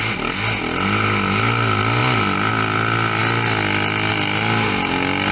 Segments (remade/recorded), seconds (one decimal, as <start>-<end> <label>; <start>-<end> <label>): 0.0-5.3 recorded